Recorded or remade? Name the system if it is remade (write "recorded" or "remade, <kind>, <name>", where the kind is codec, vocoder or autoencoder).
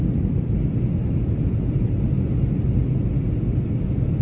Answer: recorded